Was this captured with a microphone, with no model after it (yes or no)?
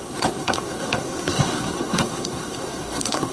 no